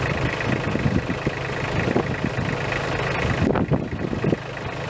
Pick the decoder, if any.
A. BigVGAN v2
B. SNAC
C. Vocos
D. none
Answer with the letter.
D